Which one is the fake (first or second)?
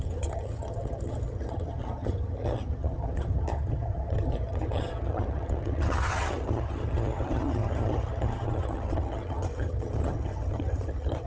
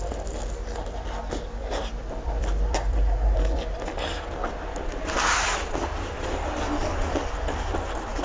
first